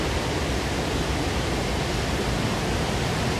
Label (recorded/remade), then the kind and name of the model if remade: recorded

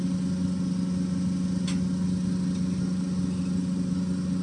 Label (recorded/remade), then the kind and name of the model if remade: recorded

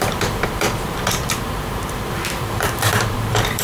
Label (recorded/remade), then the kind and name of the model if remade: remade, vocoder, BigVGAN v2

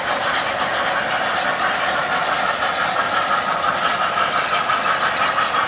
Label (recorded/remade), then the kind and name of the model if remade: remade, vocoder, BigVGAN v2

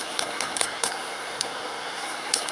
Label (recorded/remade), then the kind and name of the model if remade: remade, codec, SNAC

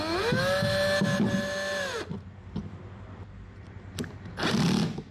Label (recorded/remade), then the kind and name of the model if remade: recorded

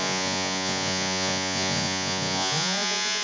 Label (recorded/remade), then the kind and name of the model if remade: remade, vocoder, Vocos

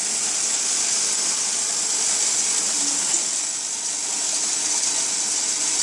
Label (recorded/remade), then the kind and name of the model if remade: recorded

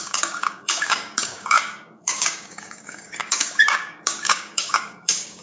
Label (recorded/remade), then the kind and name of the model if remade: remade, codec, DAC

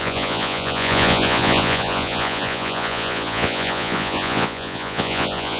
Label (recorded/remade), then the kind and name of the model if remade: remade, vocoder, Vocos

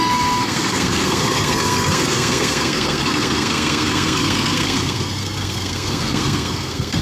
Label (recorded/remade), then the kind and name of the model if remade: remade, codec, SNAC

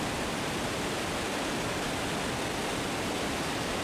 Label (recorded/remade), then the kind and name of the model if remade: recorded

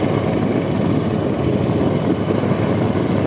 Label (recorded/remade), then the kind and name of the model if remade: recorded